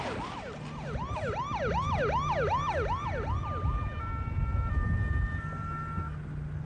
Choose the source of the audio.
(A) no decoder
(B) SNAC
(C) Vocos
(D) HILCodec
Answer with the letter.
A